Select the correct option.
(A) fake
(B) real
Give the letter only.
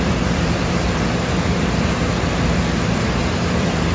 A